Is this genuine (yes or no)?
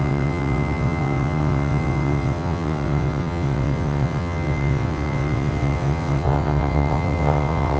no